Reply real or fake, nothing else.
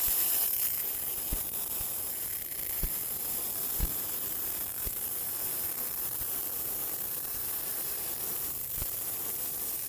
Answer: fake